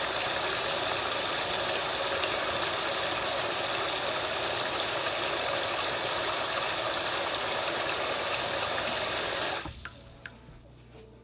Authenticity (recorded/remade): recorded